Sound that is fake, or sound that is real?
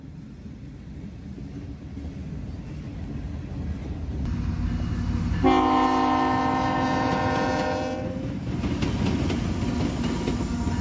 real